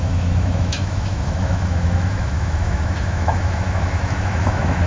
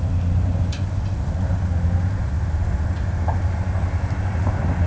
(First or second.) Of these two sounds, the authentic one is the second